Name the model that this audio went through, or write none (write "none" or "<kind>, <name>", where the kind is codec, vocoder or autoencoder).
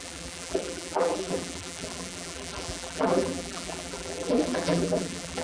vocoder, BigVGAN v2